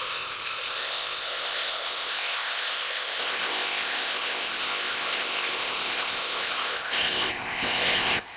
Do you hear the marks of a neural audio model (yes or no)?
yes